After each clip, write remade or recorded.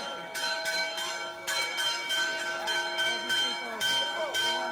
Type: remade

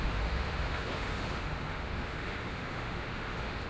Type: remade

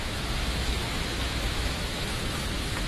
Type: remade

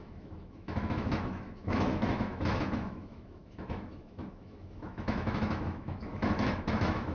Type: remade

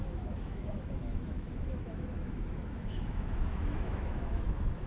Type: remade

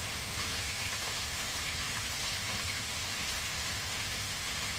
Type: remade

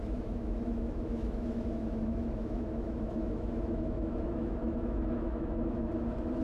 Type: remade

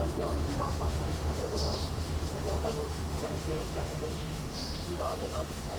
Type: remade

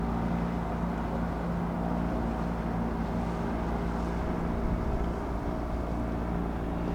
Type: recorded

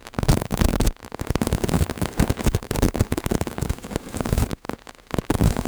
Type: remade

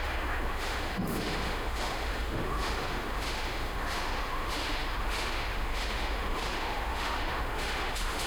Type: remade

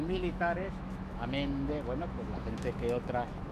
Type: remade